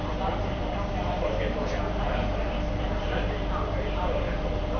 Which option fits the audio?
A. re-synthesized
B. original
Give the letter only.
A